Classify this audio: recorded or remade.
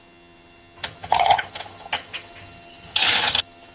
remade